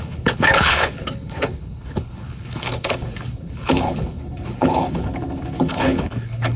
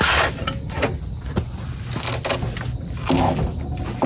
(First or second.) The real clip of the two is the second